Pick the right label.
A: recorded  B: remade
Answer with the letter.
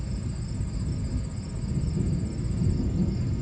A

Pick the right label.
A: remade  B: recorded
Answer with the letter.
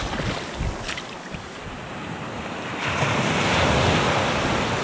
B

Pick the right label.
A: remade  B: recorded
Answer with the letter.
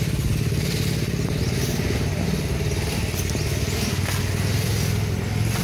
B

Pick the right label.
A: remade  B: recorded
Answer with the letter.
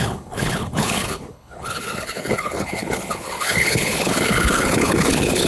A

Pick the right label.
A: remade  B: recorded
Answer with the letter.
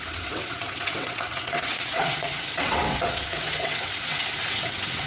A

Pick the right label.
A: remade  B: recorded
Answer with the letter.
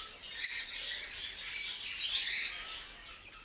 B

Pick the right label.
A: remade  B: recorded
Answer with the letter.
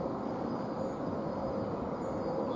B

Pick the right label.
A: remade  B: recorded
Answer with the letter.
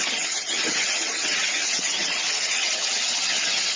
A